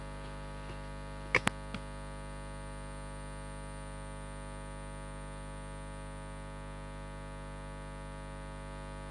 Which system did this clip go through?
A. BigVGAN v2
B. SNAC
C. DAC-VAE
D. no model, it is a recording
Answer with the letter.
D